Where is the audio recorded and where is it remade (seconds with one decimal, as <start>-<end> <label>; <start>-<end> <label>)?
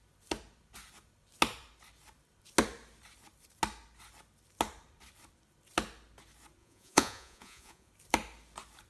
0.0-6.6 recorded; 6.6-7.9 remade; 7.9-8.9 recorded